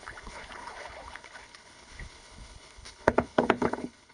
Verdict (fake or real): fake